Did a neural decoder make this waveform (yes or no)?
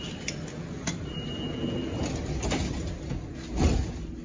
no